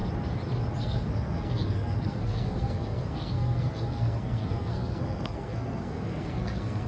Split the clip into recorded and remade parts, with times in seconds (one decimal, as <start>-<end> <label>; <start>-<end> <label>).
0.0-0.8 recorded; 0.8-6.9 remade